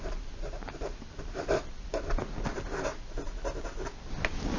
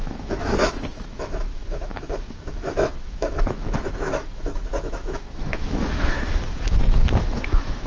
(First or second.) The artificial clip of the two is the second